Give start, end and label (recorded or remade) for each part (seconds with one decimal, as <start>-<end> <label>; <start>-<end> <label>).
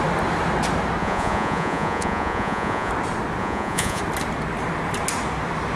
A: 0.0-1.0 recorded; 1.0-2.9 remade; 2.9-3.4 recorded; 3.4-4.0 remade; 4.0-5.8 recorded